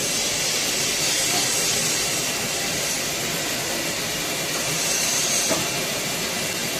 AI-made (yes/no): no